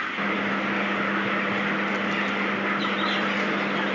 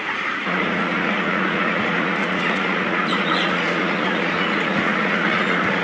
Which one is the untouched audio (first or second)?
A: first